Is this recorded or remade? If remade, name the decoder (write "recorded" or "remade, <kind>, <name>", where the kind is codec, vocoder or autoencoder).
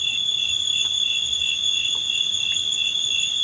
recorded